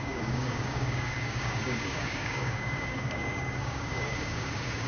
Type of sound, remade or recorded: remade